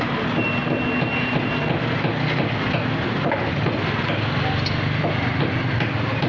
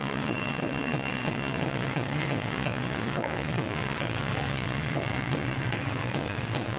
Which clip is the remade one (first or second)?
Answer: second